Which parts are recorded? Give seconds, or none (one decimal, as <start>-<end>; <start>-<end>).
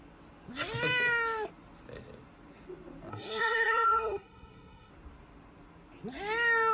0.0-3.1; 4.9-6.7